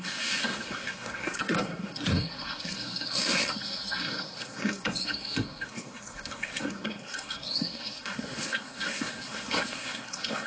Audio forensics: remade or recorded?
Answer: remade